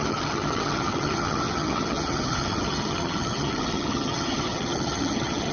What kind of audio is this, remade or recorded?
remade